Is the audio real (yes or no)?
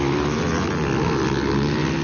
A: yes